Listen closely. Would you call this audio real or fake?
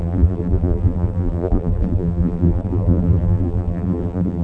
fake